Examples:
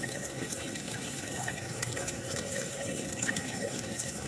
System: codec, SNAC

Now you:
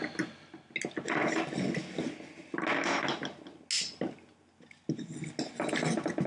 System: none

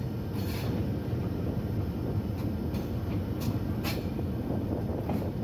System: none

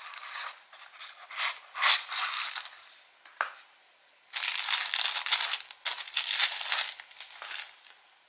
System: none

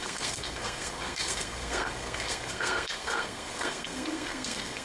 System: codec, SNAC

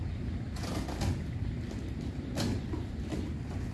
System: none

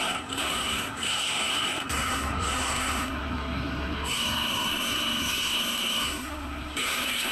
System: codec, SNAC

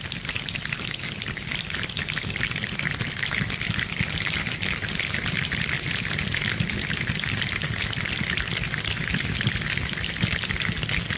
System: none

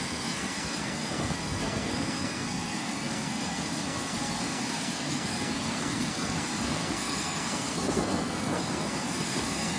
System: codec, SNAC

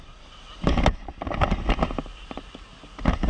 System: none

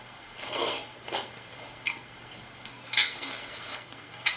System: codec, SNAC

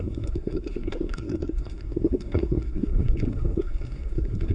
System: codec, SNAC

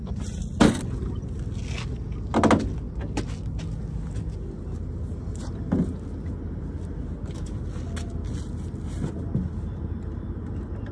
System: none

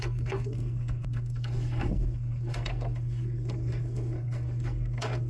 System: codec, SNAC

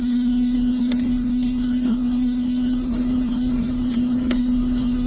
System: codec, SNAC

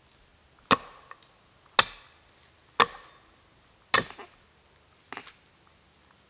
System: none